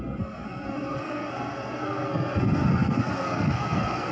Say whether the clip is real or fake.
fake